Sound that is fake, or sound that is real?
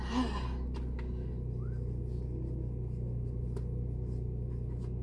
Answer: real